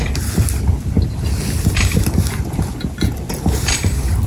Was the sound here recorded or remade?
recorded